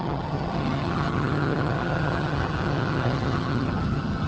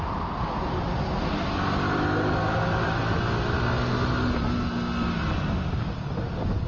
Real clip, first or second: second